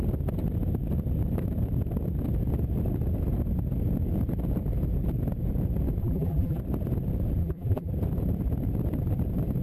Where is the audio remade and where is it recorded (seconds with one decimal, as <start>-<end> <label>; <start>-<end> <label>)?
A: 0.0-6.0 recorded; 6.0-6.6 remade; 6.6-7.4 recorded; 7.4-7.9 remade; 7.9-9.6 recorded